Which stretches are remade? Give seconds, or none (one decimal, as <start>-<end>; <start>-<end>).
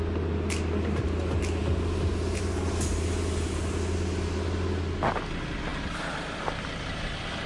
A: none